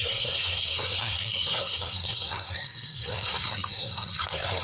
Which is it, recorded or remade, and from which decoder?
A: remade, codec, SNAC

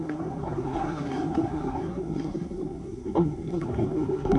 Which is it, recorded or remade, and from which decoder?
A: remade, codec, SNAC